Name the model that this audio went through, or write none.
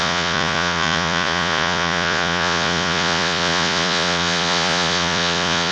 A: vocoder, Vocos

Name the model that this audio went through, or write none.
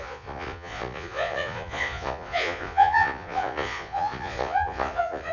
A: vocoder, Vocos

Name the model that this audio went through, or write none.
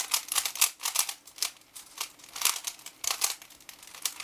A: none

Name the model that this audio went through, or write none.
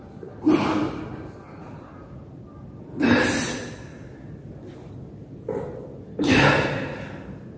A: none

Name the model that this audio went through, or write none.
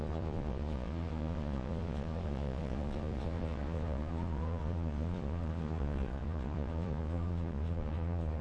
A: vocoder, Vocos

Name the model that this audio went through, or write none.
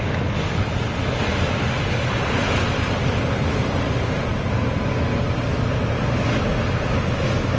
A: none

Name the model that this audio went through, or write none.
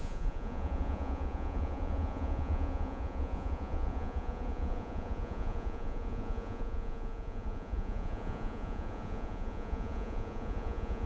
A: vocoder, Vocos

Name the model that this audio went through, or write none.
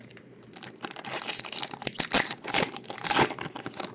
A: none